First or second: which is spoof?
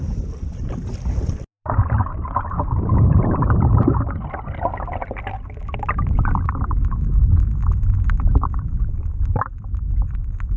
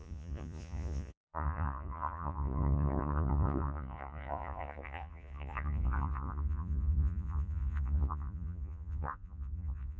second